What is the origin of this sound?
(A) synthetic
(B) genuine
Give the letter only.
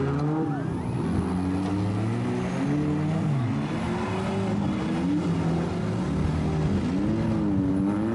B